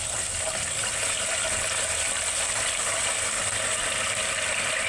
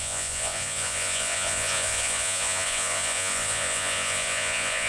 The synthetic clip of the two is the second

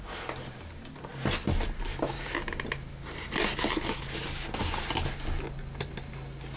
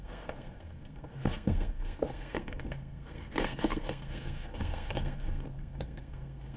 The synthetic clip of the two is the second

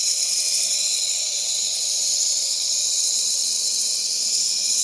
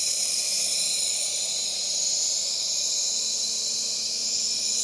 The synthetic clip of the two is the first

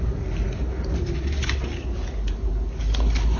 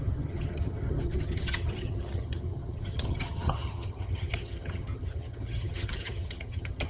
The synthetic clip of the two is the second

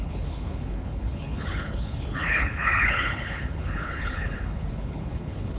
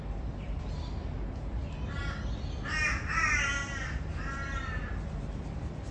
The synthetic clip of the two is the first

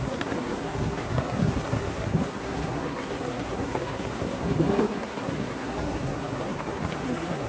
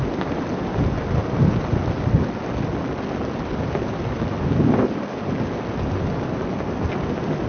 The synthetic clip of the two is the first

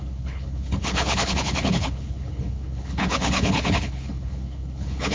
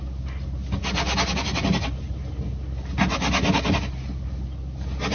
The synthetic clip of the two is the first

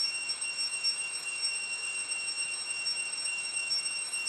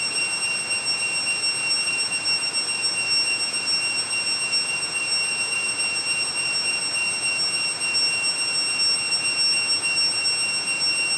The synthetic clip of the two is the first